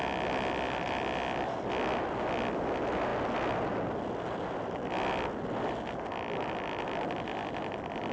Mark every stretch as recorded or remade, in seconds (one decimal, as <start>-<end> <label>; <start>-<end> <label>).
0.0-8.1 recorded